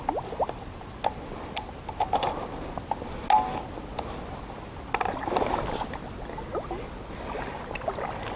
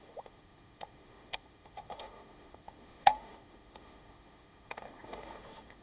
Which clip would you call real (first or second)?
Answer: first